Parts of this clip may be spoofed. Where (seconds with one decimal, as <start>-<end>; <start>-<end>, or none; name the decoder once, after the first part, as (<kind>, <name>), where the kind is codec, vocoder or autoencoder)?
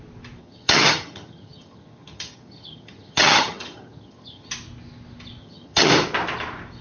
0.4-4.5 (vocoder, HiFi-GAN); 5.4-5.9